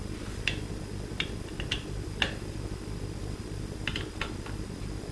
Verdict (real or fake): real